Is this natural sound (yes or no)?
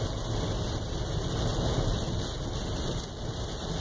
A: yes